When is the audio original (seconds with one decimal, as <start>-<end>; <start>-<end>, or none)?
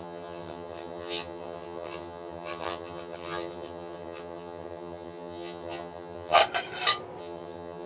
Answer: 6.4-7.2